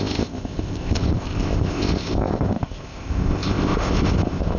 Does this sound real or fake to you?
fake